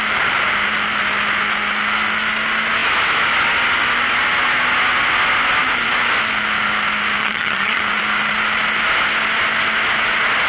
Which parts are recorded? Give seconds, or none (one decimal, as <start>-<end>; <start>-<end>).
0.0-7.2; 7.8-10.5